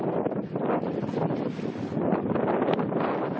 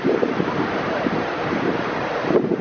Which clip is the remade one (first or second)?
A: second